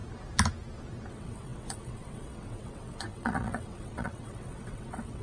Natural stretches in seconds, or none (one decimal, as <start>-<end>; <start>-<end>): 0.0-1.1